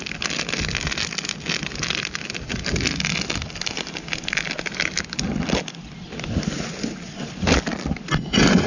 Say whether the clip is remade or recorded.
recorded